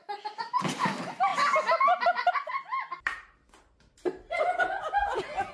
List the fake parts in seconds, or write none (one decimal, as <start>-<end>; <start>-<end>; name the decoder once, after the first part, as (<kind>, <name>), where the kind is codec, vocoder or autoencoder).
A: none